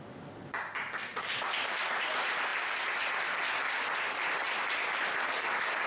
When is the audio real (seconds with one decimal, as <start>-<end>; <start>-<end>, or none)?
0.0-5.9